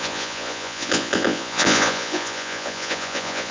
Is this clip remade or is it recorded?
remade